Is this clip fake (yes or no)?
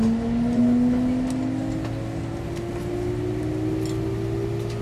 no